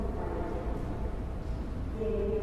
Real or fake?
real